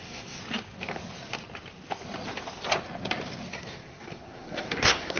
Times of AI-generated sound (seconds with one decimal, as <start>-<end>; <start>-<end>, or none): 0.0-0.4; 3.5-5.2